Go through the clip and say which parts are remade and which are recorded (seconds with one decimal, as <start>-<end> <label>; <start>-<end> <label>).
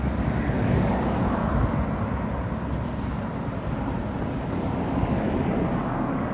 0.0-1.4 remade; 1.4-4.5 recorded; 4.5-6.3 remade